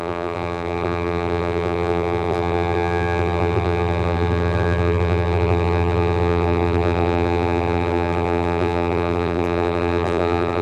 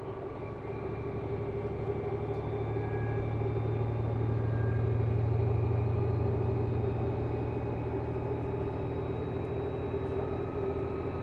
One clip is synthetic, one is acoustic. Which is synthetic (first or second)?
first